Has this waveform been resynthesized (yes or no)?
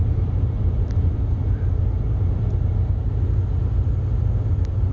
no